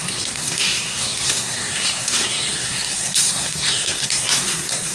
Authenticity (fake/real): fake